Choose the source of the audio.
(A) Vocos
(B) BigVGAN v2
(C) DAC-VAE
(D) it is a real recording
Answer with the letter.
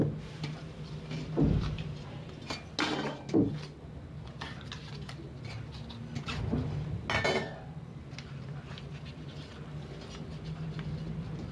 D